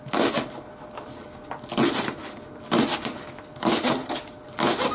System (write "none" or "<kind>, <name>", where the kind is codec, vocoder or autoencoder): none